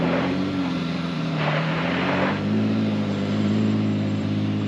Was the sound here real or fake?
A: fake